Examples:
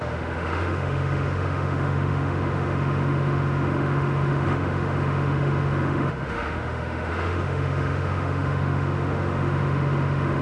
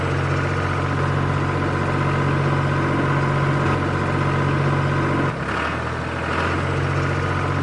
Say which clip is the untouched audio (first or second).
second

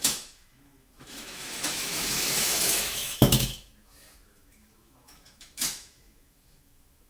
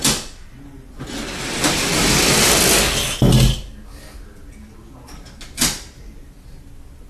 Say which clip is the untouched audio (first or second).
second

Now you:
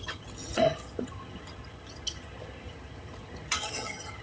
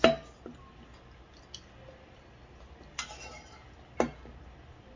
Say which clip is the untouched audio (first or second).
second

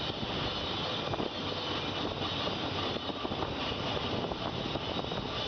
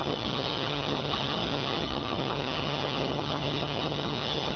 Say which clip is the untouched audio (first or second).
first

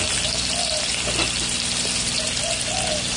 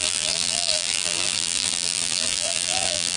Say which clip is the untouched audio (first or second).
first